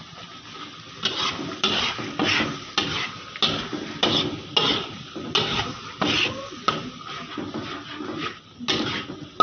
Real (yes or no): yes